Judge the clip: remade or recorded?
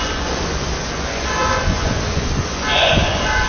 remade